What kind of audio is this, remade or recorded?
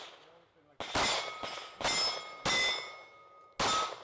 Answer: recorded